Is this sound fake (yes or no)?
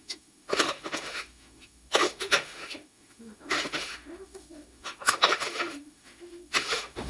yes